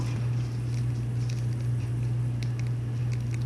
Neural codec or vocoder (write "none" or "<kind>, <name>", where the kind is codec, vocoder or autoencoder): none